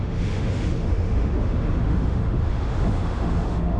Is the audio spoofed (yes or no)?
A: yes